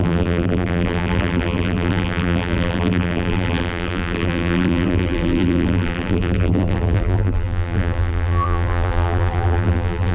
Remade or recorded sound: remade